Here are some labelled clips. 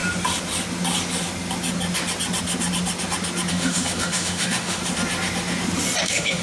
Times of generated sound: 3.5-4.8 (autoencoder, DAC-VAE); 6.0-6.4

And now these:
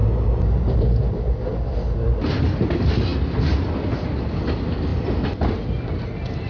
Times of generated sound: none

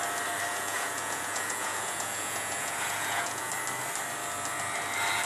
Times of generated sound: 0.5-3.5 (vocoder, Vocos)

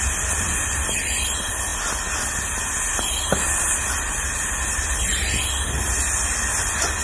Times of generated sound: none

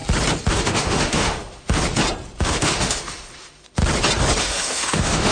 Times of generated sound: 0.5-1.8 (autoencoder, DAC-VAE); 2.4-3.8; 4.4-5.3